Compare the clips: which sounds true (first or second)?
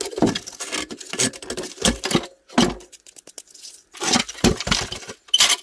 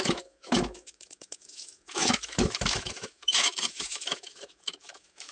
first